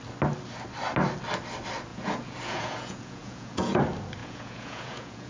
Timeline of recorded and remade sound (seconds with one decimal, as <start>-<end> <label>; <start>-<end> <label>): 0.0-1.9 recorded; 1.9-3.8 remade; 3.8-4.2 recorded; 4.2-5.3 remade